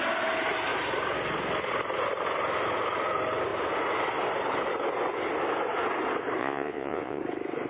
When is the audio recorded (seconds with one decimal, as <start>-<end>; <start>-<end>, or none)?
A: 0.0-6.4; 7.2-7.7